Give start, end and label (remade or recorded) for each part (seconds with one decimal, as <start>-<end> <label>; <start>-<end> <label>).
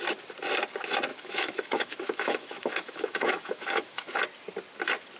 0.0-1.1 recorded; 1.1-4.2 remade; 4.2-5.2 recorded